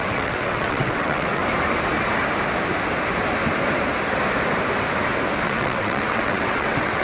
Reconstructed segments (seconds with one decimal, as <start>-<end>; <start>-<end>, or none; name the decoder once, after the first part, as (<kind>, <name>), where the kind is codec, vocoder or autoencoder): 0.0-1.4 (vocoder, WaveNeXt); 5.4-7.0